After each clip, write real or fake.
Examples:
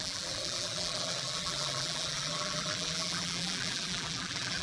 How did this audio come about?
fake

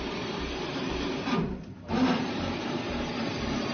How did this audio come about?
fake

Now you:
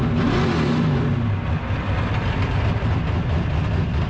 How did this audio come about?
real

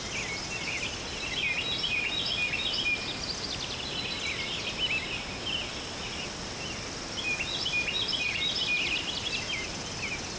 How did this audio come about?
real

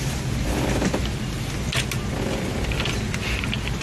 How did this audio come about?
real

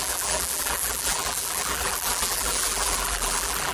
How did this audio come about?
fake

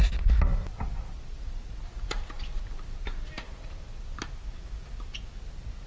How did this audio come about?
real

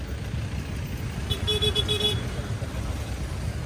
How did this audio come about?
real